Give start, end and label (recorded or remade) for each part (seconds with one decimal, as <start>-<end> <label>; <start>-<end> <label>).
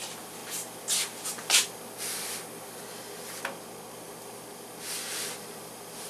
0.0-6.1 recorded